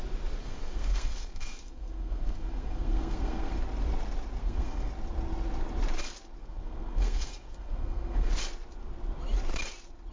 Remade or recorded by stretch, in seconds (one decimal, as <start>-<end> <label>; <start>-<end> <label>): 0.0-0.4 recorded; 0.4-3.6 remade; 3.6-4.4 recorded; 4.4-4.9 remade; 4.9-6.4 recorded; 6.4-8.3 remade; 8.3-10.1 recorded